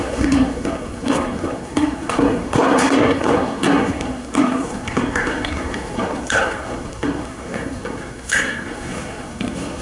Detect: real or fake fake